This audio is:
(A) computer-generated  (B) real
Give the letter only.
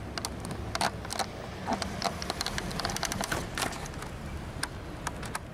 B